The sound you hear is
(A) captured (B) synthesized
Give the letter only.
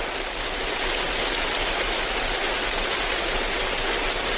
A